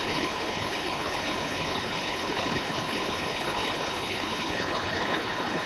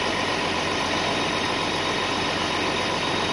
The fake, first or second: first